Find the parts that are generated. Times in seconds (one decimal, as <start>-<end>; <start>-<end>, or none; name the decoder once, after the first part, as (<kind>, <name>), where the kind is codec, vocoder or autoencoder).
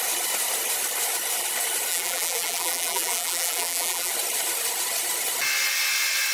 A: 1.9-4.1 (vocoder, BigVGAN v2)